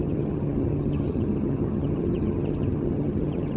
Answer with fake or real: fake